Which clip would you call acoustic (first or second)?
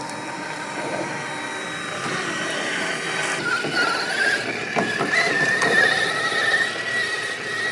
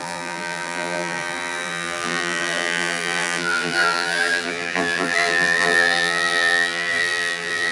first